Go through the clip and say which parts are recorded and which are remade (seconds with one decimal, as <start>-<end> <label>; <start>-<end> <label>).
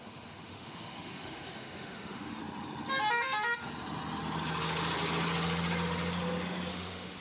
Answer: 0.0-2.4 remade; 2.4-6.7 recorded; 6.7-7.2 remade